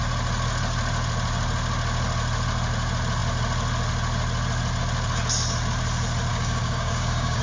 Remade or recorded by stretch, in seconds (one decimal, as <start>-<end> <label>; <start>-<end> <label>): 0.0-6.3 recorded; 6.3-7.4 remade